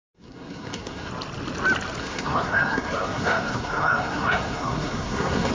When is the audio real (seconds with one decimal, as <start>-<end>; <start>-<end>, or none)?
1.1-2.0